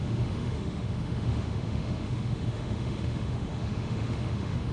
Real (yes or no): no